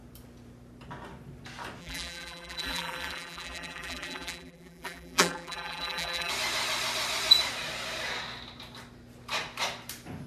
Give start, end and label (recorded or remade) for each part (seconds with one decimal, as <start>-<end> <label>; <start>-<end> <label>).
0.0-1.8 recorded; 1.8-6.3 remade; 6.3-10.3 recorded